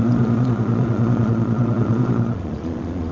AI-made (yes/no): yes